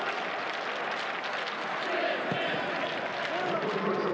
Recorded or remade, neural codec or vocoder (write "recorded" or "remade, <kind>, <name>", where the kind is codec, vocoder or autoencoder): recorded